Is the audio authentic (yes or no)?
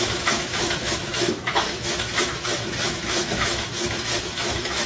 no